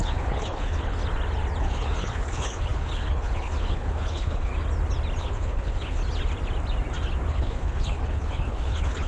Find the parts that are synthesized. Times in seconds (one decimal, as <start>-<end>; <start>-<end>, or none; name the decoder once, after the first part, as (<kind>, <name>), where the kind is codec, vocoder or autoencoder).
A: 0.0-1.0 (codec, HILCodec); 1.6-4.5; 5.2-6.0; 7.3-9.1